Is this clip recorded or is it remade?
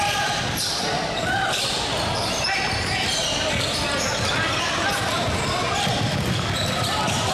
remade